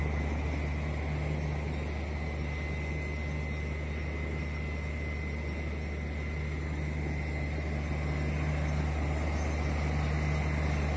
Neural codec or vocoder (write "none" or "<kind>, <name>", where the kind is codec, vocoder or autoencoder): none